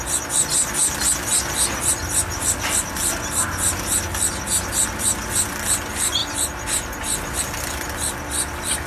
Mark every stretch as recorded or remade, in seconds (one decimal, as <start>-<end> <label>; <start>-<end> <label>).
0.0-8.9 recorded